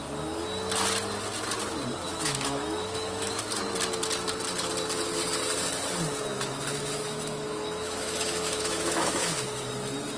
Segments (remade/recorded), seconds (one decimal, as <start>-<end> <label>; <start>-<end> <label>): 0.0-2.1 recorded; 2.1-3.4 remade; 3.4-6.3 recorded; 6.3-9.7 remade; 9.7-10.2 recorded